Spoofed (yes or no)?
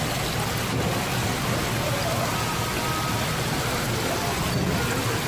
no